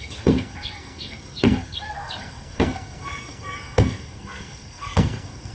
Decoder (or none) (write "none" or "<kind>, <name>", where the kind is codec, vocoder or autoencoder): codec, SNAC